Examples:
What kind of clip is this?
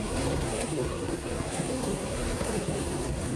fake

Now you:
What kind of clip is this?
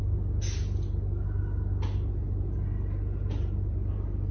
real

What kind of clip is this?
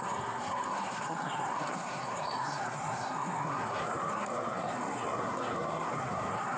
fake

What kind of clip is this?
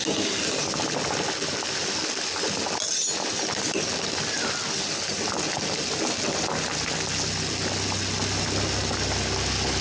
real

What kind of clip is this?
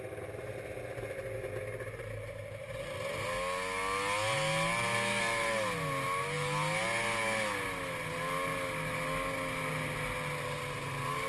real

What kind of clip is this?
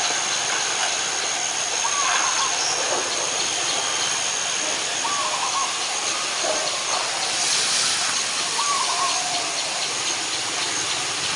real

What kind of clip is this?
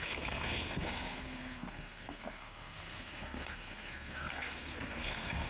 fake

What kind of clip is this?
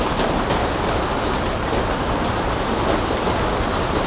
real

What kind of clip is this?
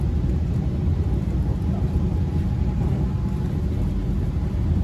real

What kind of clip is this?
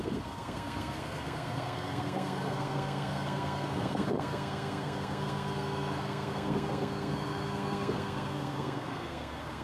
fake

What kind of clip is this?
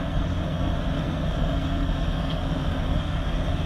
fake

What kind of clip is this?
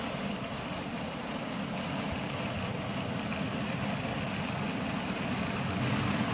real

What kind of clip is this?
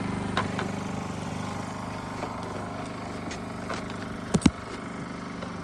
real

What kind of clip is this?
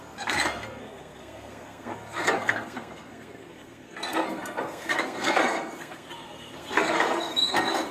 fake